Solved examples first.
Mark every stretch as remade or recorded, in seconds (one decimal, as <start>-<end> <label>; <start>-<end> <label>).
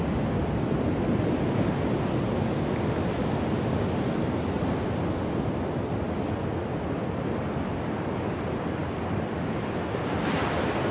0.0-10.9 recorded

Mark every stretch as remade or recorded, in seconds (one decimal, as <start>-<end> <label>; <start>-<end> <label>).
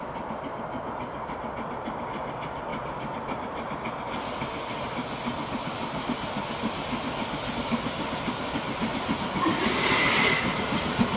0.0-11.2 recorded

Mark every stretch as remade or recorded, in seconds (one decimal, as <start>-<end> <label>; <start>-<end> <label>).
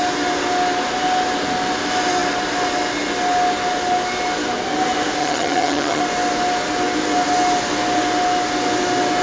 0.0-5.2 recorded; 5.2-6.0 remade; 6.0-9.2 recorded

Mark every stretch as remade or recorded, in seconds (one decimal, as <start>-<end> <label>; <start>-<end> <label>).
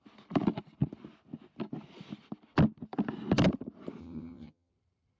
0.0-4.0 recorded; 4.0-4.7 remade; 4.7-5.2 recorded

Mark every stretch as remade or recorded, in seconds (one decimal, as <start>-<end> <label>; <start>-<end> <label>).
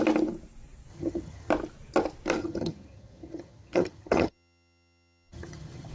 0.0-0.9 recorded; 0.9-1.5 remade; 1.5-2.4 recorded; 2.4-5.9 remade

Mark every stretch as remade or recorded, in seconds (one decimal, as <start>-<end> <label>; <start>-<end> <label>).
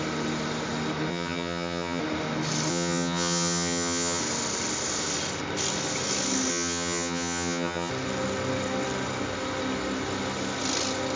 0.0-1.1 recorded; 1.1-2.0 remade; 2.0-2.7 recorded; 2.7-4.2 remade; 4.2-6.5 recorded; 6.5-7.9 remade; 7.9-11.2 recorded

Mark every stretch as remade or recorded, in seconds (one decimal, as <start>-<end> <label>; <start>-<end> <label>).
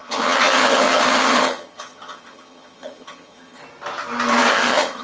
0.0-3.6 remade; 3.6-4.5 recorded; 4.5-5.0 remade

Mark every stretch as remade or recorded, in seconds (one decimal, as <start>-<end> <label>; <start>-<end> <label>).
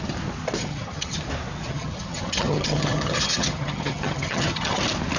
0.0-0.6 recorded; 0.6-1.2 remade; 1.2-1.7 recorded; 1.7-4.8 remade; 4.8-5.2 recorded